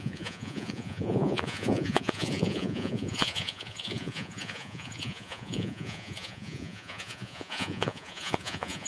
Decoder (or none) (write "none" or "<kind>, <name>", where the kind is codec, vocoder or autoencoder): vocoder, Vocos